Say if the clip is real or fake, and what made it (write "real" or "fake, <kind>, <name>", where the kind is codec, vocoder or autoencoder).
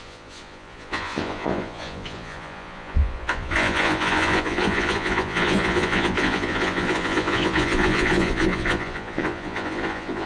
fake, vocoder, Vocos